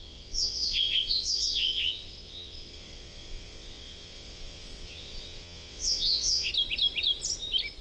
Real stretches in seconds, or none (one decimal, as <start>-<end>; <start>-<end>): 6.5-7.8